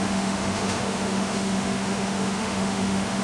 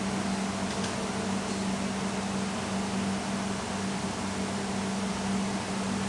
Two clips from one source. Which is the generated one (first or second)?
first